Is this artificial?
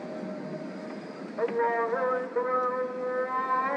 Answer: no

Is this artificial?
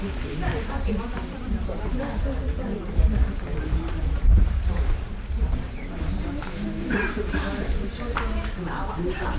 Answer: yes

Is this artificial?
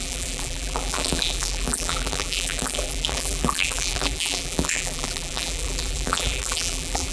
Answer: yes